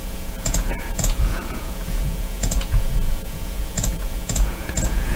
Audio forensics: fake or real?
fake